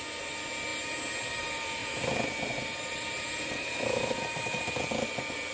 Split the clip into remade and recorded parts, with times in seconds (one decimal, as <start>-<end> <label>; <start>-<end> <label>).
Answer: 0.0-1.8 recorded; 1.8-4.7 remade; 4.7-5.5 recorded